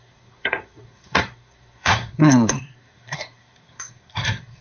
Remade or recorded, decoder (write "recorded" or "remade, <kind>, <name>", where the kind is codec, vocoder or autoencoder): remade, codec, SNAC